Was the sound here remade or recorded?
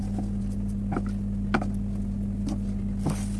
recorded